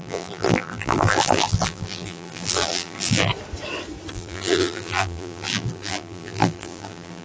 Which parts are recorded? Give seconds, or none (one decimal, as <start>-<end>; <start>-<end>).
3.3-4.1